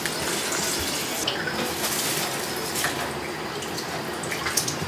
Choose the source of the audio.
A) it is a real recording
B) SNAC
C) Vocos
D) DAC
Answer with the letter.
A